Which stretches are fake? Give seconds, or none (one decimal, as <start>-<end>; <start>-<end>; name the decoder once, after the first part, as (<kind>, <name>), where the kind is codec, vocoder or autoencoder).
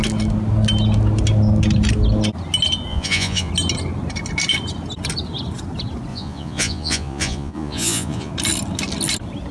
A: 2.9-3.5 (vocoder, Vocos); 6.1-8.3